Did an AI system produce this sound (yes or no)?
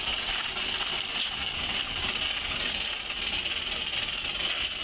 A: no